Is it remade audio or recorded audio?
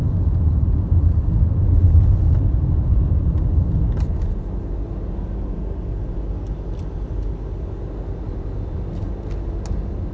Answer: recorded